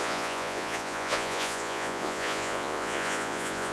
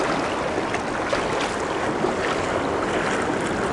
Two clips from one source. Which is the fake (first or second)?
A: first